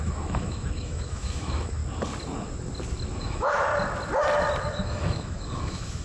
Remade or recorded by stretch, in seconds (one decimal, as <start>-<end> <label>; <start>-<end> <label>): 0.0-1.8 remade; 1.8-3.2 recorded; 3.2-3.7 remade; 3.7-4.6 recorded; 4.6-6.0 remade